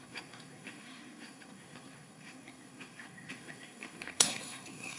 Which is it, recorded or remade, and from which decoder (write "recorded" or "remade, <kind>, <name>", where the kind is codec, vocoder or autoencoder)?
remade, codec, SNAC